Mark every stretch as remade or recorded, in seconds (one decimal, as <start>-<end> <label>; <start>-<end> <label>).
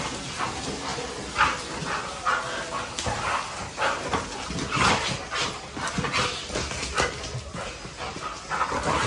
0.0-9.1 recorded